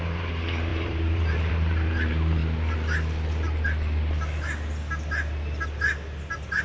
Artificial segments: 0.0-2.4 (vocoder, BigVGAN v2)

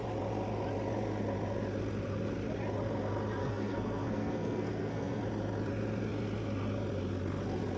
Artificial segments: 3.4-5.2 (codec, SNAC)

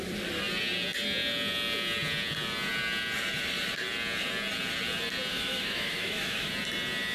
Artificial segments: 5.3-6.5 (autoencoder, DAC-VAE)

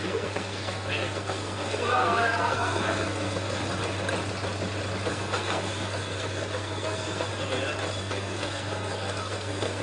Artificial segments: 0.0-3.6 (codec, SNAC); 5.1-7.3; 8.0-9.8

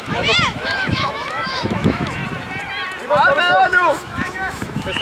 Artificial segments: 0.0-2.2 (autoencoder, DAC-VAE); 3.4-5.0

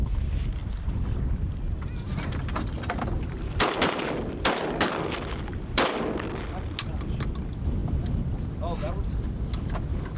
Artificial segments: none